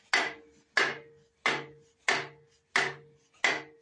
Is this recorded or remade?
recorded